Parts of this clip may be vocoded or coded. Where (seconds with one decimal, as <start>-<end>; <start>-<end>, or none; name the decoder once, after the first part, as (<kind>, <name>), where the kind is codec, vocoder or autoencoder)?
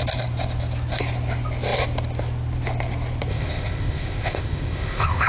3.3-5.3 (codec, ZipCodec)